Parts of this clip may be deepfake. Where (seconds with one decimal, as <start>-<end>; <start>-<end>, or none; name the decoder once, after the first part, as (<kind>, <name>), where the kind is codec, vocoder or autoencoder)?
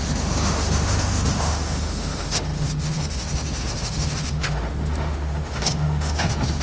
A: 0.0-6.6 (autoencoder, DAC-VAE)